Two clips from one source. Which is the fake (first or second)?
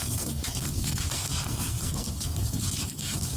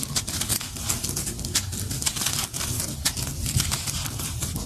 first